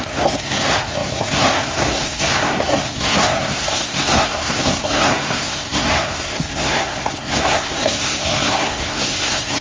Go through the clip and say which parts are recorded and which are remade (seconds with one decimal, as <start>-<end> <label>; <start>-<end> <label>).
0.0-9.6 remade